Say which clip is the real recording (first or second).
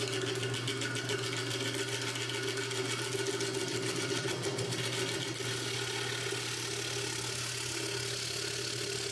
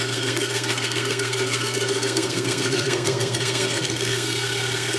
first